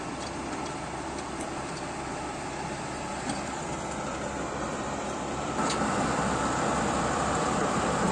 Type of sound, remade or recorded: remade